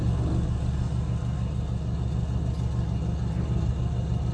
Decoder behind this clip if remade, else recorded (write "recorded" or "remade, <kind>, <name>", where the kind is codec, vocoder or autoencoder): recorded